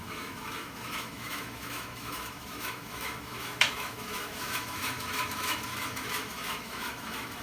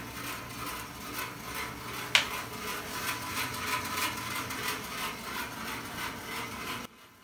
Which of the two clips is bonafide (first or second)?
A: second